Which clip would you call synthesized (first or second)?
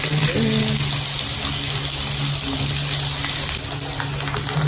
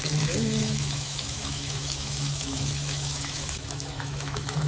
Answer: second